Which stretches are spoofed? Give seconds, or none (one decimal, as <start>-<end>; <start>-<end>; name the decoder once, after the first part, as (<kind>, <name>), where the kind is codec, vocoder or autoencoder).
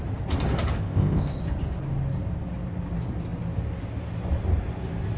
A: 0.8-1.4 (codec, ZipCodec)